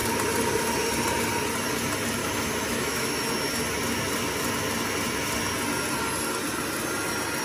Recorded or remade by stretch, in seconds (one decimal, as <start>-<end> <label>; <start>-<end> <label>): 0.0-2.2 recorded; 2.2-3.2 remade; 3.2-7.4 recorded

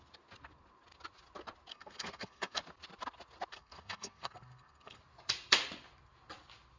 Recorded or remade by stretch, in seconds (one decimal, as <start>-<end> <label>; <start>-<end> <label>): 0.0-1.7 recorded; 1.7-2.6 remade; 2.6-3.5 recorded; 3.5-5.0 remade; 5.0-6.8 recorded

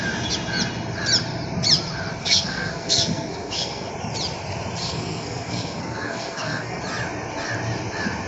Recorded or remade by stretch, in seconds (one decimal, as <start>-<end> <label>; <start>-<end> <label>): 0.0-2.2 recorded; 2.2-3.9 remade; 3.9-4.8 recorded; 4.8-6.8 remade; 6.8-8.3 recorded

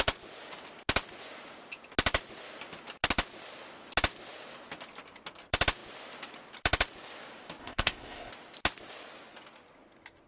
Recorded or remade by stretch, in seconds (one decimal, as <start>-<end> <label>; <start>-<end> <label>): 0.0-7.6 recorded; 7.6-8.3 remade; 8.3-10.3 recorded